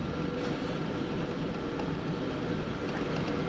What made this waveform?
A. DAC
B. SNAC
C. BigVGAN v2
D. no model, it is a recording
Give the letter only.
C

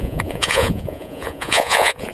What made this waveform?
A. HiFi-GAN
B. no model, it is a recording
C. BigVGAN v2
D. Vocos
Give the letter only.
D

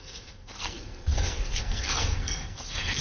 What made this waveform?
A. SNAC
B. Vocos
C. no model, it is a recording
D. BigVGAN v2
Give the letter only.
A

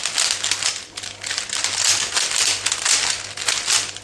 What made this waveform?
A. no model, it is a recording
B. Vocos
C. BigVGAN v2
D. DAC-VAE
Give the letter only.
A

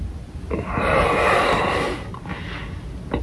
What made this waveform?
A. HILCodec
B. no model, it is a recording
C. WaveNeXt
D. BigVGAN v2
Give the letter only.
B